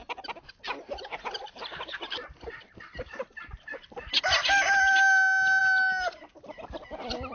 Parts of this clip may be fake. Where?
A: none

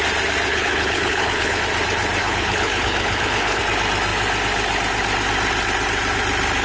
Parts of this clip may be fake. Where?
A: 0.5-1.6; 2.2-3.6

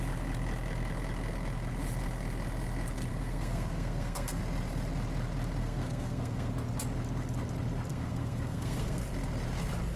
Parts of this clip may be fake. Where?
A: 3.1-4.4; 5.6-6.5; 7.9-9.0